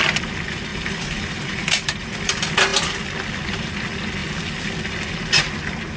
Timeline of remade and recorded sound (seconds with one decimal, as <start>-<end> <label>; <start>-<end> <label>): 0.0-0.7 recorded; 0.7-2.3 remade; 2.3-6.0 recorded